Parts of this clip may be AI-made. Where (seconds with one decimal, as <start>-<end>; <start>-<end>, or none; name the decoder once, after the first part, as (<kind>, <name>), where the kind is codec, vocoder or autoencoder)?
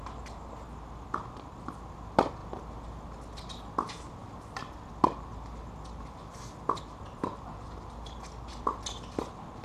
none